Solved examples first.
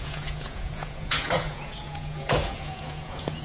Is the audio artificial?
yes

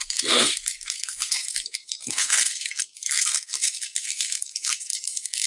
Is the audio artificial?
yes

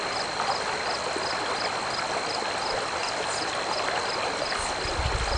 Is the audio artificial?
no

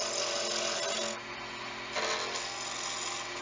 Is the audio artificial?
no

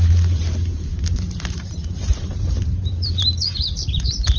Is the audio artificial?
yes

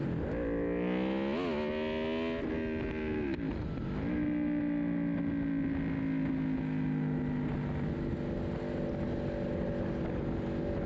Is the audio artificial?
no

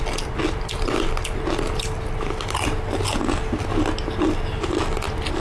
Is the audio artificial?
no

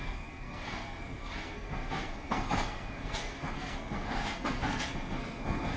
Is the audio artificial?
yes